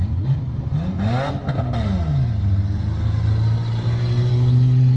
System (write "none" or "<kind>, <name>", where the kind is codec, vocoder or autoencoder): none